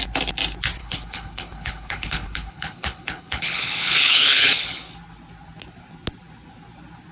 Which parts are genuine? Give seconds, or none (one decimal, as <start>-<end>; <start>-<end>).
0.0-0.8; 4.9-7.1